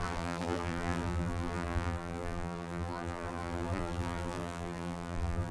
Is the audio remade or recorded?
remade